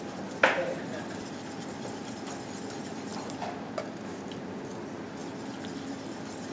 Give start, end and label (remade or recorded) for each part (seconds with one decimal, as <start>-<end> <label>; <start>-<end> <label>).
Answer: 0.0-6.5 recorded